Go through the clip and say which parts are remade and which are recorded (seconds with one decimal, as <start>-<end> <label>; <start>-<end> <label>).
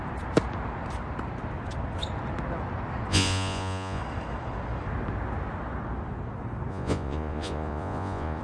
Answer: 0.0-3.1 recorded; 3.1-4.0 remade; 4.0-6.7 recorded; 6.7-8.4 remade